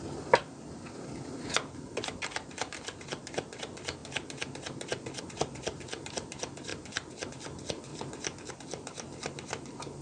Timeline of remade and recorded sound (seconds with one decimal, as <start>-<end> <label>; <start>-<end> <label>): 0.0-4.0 remade; 4.0-5.2 recorded; 5.2-6.7 remade; 6.7-7.3 recorded; 7.3-7.9 remade; 7.9-8.5 recorded; 8.5-10.0 remade